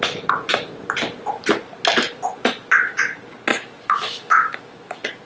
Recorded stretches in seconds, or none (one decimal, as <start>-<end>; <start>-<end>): 0.0-3.5